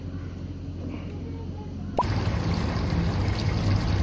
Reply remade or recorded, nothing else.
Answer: recorded